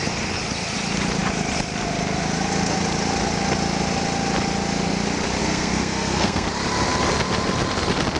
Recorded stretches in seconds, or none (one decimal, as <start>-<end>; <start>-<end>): 0.0-5.4; 6.5-8.2